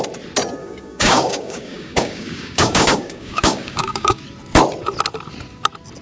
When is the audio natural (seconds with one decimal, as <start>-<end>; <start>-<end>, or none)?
0.0-0.6; 4.2-6.0